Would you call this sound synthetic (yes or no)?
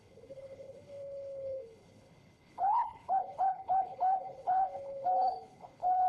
yes